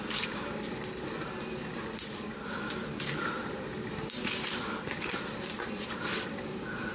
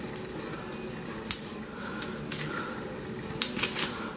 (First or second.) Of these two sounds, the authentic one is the second